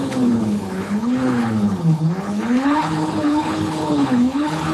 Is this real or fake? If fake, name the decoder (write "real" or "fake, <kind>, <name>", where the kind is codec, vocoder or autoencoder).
fake, codec, HILCodec